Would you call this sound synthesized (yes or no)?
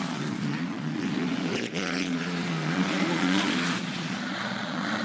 yes